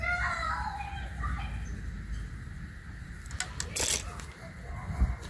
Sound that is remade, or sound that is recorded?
recorded